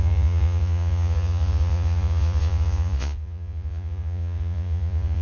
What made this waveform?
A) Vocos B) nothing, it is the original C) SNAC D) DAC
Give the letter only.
A